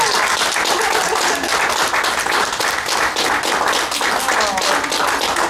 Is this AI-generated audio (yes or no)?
no